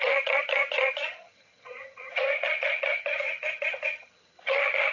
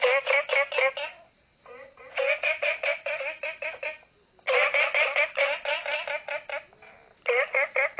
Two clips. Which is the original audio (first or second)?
second